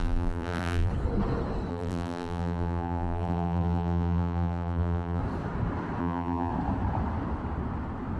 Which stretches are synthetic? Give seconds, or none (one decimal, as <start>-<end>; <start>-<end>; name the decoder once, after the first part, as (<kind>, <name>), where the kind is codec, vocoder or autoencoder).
0.0-0.9 (vocoder, BigVGAN v2); 1.7-5.2; 6.0-6.5